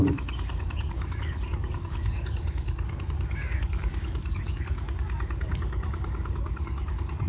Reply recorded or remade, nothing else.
remade